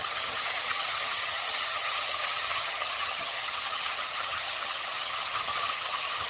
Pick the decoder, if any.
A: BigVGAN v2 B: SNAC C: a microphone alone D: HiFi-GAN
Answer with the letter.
D